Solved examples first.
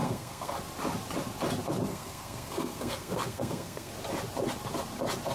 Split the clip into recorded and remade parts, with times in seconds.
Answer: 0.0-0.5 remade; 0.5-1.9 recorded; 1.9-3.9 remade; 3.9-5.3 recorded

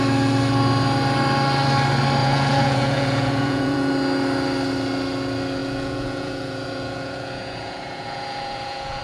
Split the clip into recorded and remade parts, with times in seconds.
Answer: 0.0-2.2 recorded; 2.2-3.9 remade; 3.9-5.6 recorded; 5.6-9.0 remade

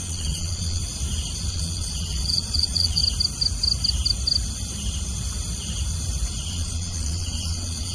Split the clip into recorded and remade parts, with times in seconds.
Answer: 0.0-0.8 remade; 0.8-1.5 recorded; 1.5-3.0 remade; 3.0-6.5 recorded; 6.5-7.9 remade

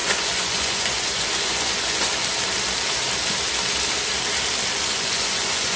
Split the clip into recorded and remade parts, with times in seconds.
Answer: 0.0-2.1 remade; 2.1-4.8 recorded; 4.8-5.8 remade

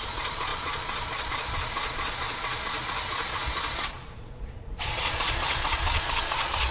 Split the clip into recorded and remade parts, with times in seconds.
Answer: 0.0-6.7 remade

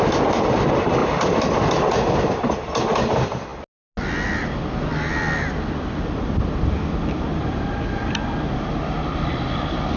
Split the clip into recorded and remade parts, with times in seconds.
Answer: 0.0-1.0 recorded; 1.0-1.6 remade; 1.6-10.0 recorded

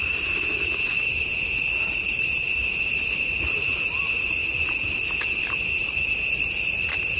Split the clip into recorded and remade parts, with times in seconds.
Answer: 0.0-1.3 remade; 1.3-2.2 recorded; 2.2-4.4 remade; 4.4-5.3 recorded; 5.3-7.2 remade